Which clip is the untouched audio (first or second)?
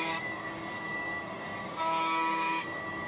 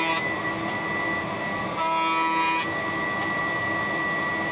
second